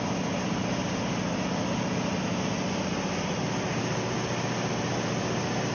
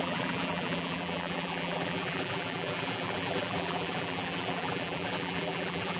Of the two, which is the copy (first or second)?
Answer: second